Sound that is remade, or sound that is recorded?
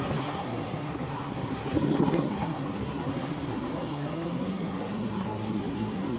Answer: remade